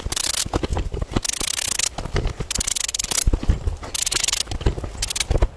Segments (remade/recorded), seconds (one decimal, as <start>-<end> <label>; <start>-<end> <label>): 0.0-5.6 recorded

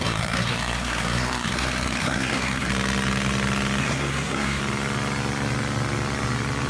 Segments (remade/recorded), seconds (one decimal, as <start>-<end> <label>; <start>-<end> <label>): 0.0-2.7 remade; 2.7-3.8 recorded; 3.8-4.6 remade; 4.6-6.7 recorded

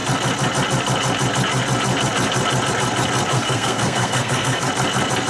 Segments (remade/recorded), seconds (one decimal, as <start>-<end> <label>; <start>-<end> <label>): 0.0-3.3 recorded; 3.3-4.7 remade; 4.7-5.3 recorded

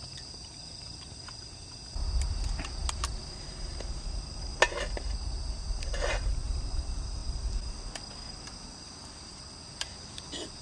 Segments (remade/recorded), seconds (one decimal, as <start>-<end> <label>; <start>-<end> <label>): 0.0-10.6 recorded

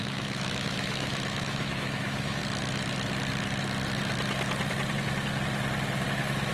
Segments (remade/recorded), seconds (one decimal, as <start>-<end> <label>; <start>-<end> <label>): 0.0-2.4 remade; 2.4-6.5 recorded